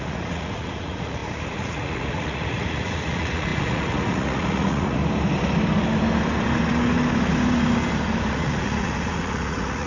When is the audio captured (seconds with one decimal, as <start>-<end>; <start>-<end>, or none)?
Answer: 5.0-8.3